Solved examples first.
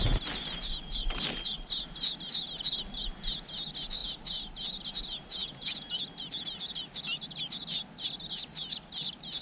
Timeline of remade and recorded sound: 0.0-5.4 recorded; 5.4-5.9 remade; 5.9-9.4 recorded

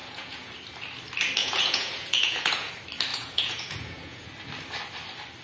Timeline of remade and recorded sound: 0.0-0.5 remade; 0.5-1.4 recorded; 1.4-2.7 remade; 2.7-3.1 recorded; 3.1-4.3 remade; 4.3-5.4 recorded

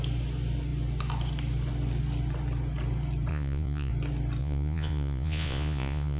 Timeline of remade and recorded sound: 0.0-3.3 recorded; 3.3-3.9 remade; 3.9-4.4 recorded; 4.4-6.2 remade

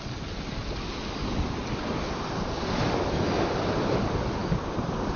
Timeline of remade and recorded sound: 0.0-5.2 recorded